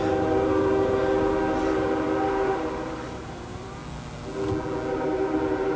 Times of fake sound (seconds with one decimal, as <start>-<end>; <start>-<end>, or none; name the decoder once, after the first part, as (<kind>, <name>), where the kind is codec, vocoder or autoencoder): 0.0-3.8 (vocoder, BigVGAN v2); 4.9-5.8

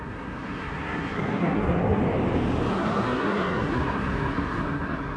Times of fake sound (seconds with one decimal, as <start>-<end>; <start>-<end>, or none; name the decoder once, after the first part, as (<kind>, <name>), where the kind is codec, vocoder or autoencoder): 0.0-2.0 (codec, SNAC); 2.7-5.2

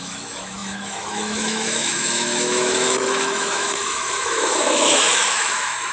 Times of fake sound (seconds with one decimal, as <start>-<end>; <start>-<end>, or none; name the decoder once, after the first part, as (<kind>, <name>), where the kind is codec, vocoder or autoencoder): 0.0-5.9 (autoencoder, DAC-VAE)